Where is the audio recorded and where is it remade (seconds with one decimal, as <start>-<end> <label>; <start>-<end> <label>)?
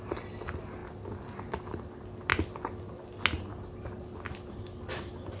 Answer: 0.0-5.4 recorded